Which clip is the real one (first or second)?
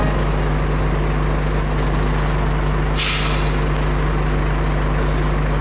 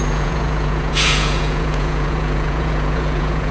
first